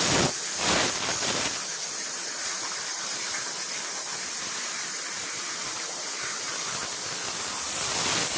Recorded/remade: recorded